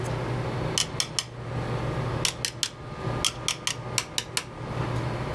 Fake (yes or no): no